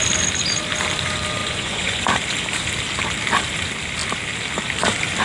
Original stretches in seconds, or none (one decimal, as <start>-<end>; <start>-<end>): 0.0-1.4; 2.0-5.2